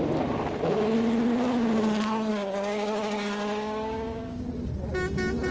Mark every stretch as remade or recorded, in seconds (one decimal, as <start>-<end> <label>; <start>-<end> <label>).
0.0-2.3 recorded; 2.3-4.5 remade; 4.5-5.5 recorded